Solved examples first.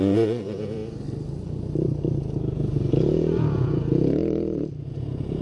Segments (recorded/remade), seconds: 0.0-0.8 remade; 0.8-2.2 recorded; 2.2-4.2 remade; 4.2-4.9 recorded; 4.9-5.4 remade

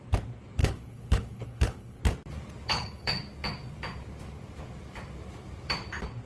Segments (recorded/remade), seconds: 0.0-0.6 recorded; 0.6-2.0 remade; 2.0-2.7 recorded; 2.7-3.2 remade; 3.2-6.3 recorded

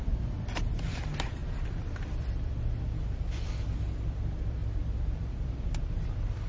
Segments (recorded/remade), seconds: 0.0-6.5 remade

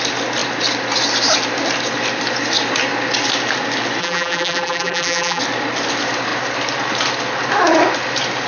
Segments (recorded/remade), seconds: 0.0-4.0 recorded; 4.0-5.4 remade; 5.4-8.5 recorded

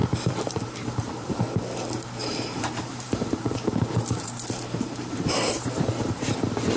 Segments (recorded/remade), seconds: 0.0-1.6 remade; 1.6-2.2 recorded; 2.2-6.3 remade; 6.3-6.8 recorded